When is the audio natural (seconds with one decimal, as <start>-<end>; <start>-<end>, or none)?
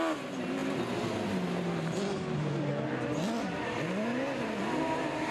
0.0-5.3